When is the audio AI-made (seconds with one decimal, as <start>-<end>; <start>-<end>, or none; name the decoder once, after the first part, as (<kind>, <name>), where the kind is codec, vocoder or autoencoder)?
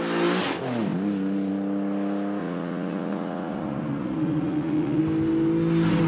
2.4-5.0 (vocoder, Vocos)